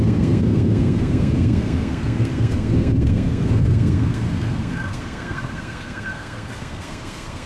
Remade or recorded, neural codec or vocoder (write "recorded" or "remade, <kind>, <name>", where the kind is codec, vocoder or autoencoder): remade, codec, SNAC